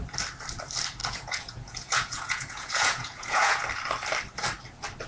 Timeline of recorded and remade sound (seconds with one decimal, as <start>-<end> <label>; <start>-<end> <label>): 0.0-1.0 recorded; 1.0-3.6 remade; 3.6-5.1 recorded